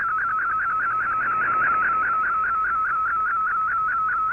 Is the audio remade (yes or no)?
no